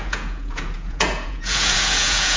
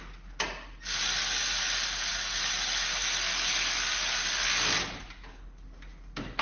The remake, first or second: first